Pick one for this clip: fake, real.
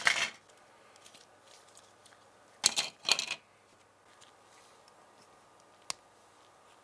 real